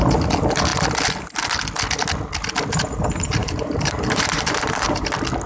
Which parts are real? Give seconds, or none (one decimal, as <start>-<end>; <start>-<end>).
0.0-3.4; 5.1-5.5